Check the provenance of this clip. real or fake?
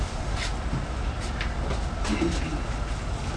real